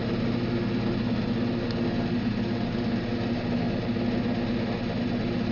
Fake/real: real